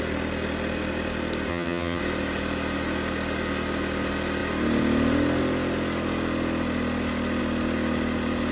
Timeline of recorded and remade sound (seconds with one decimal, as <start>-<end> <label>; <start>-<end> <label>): 0.0-1.5 recorded; 1.5-2.0 remade; 2.0-8.5 recorded